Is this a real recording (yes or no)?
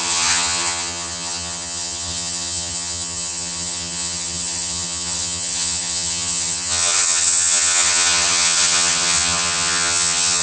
no